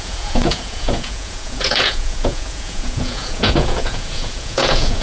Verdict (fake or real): fake